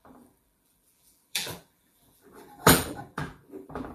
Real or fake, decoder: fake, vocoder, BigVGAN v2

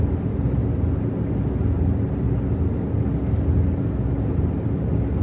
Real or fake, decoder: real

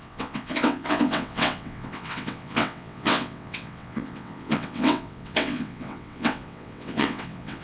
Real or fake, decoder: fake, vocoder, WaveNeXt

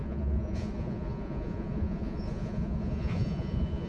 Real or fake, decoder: fake, vocoder, Vocos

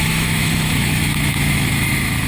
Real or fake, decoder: fake, autoencoder, DAC-VAE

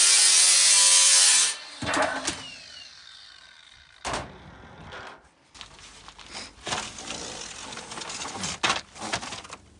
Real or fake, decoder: real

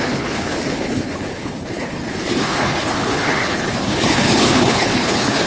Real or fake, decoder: fake, codec, HILCodec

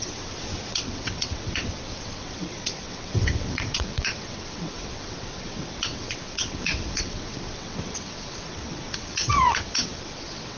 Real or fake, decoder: fake, vocoder, WaveNeXt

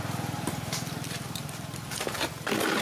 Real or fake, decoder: fake, vocoder, BigVGAN v2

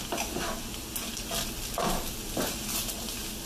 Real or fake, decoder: real